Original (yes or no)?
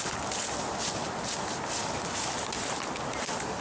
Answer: yes